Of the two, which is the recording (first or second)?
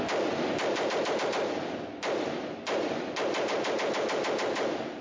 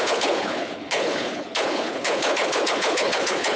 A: first